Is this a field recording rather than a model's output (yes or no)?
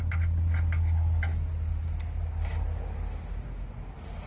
yes